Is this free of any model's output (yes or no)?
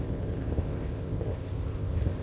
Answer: no